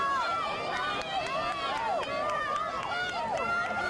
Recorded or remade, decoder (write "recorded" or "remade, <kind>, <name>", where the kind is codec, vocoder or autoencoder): recorded